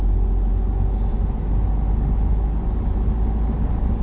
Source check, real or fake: real